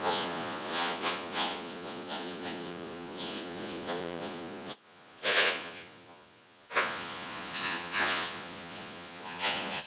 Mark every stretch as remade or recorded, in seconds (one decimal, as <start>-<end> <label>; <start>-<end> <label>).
0.0-9.9 remade